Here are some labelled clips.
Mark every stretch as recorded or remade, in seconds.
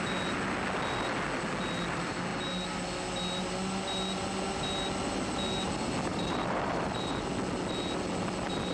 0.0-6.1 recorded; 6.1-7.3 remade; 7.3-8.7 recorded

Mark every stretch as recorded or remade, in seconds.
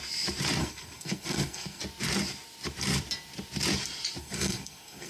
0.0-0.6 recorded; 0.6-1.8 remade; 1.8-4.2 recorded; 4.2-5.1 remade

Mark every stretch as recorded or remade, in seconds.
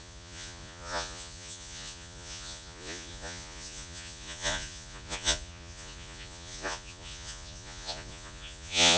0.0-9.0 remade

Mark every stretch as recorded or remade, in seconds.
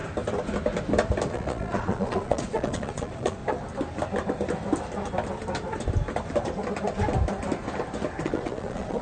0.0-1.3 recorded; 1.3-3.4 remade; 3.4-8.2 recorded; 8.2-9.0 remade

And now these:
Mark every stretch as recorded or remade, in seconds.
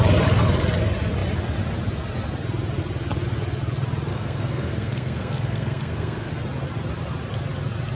0.0-4.1 recorded; 4.1-6.3 remade; 6.3-8.0 recorded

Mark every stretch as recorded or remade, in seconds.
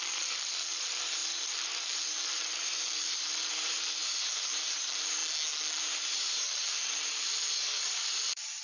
0.0-5.2 remade; 5.2-5.8 recorded; 5.8-8.6 remade